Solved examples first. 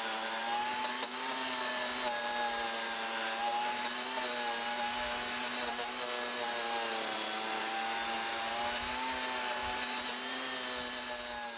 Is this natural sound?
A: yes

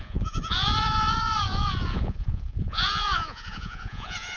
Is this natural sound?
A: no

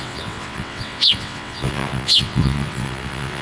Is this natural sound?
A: no